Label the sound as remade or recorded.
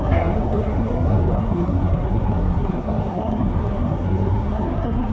remade